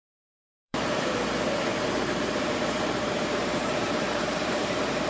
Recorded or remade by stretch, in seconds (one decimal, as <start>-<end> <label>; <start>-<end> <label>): 0.0-0.6 recorded; 0.6-1.1 remade; 1.1-1.7 recorded; 1.7-5.1 remade